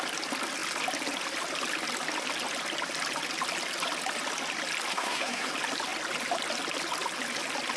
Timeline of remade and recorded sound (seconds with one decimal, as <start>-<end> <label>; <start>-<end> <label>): 0.0-4.9 recorded; 4.9-5.5 remade; 5.5-7.8 recorded